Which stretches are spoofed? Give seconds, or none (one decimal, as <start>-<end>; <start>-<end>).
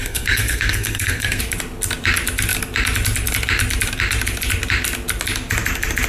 0.0-1.4